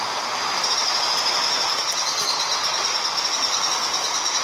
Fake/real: real